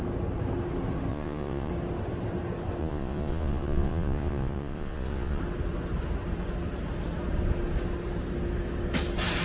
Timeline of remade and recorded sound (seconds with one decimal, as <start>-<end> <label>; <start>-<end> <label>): 0.0-1.1 recorded; 1.1-1.7 remade; 1.7-2.8 recorded; 2.8-5.4 remade; 5.4-9.4 recorded